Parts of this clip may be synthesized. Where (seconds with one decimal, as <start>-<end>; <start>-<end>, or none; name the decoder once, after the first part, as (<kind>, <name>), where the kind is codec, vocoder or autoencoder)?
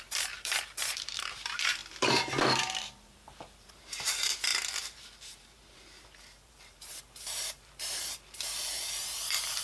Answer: 0.0-9.6 (vocoder, BigVGAN v2)